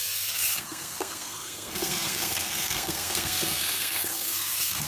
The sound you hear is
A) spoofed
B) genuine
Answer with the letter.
A